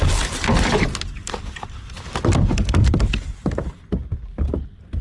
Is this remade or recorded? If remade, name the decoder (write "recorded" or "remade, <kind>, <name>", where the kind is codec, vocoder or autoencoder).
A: remade, vocoder, BigVGAN v2